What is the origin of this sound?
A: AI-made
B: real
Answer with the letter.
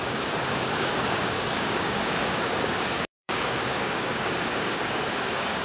A